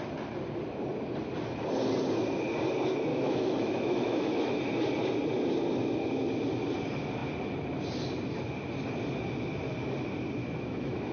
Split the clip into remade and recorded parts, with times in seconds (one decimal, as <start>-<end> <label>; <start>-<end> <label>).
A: 0.0-3.1 recorded; 3.1-4.6 remade; 4.6-10.4 recorded; 10.4-11.1 remade